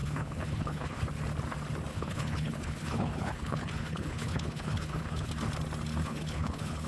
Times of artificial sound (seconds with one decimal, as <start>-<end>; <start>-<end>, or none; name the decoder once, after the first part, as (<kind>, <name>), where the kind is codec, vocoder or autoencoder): 0.0-1.0 (codec, HILCodec); 1.9-5.3; 6.0-6.9